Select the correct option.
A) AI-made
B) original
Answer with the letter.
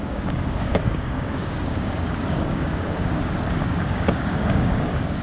A